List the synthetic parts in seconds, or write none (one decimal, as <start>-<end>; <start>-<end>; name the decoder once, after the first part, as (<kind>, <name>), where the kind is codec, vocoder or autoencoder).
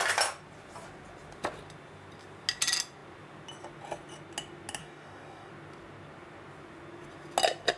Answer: 4.8-5.5 (codec, DAC)